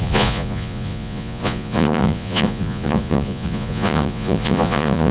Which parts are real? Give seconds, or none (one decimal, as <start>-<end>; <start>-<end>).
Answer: none